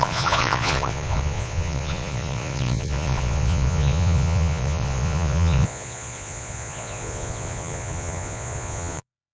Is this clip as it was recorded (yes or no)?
no